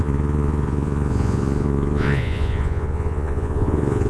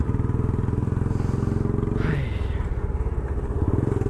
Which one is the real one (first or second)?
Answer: second